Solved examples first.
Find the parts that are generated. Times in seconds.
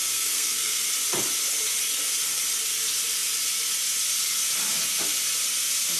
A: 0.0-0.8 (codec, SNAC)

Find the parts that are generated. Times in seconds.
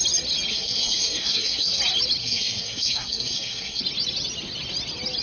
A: 0.5-1.8 (codec, SNAC); 2.2-3.8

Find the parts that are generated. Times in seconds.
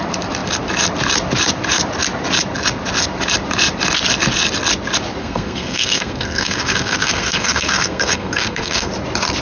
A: 5.2-8.9 (codec, SNAC)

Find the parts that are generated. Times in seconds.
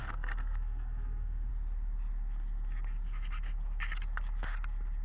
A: 0.0-1.5 (codec, SNAC)